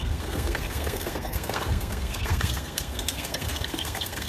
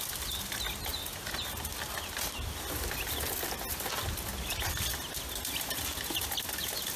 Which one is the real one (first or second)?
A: second